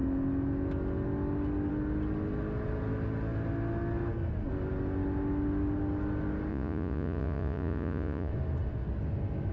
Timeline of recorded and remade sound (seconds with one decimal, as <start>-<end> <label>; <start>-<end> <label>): 0.0-6.5 recorded; 6.5-8.3 remade; 8.3-9.5 recorded